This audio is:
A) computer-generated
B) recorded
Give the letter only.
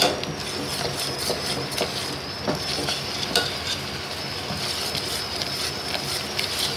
B